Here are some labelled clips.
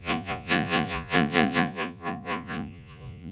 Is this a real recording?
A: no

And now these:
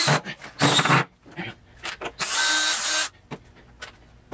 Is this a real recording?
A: yes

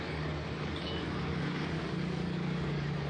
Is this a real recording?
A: no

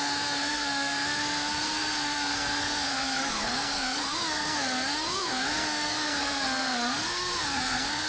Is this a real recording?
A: no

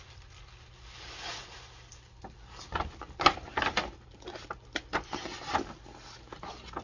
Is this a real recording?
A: yes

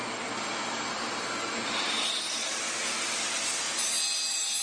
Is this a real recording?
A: yes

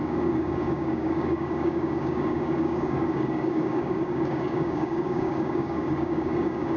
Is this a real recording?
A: no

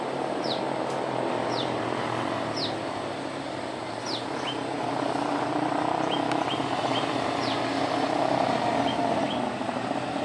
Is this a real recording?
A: no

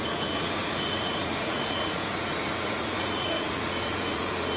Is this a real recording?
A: no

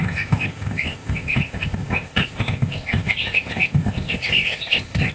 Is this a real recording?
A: no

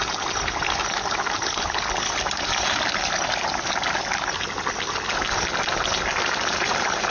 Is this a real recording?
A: yes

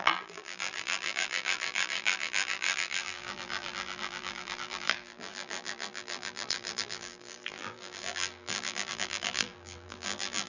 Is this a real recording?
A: no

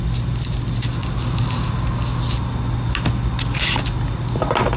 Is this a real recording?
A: yes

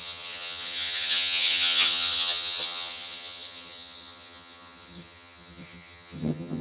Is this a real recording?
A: no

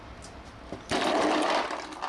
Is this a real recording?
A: yes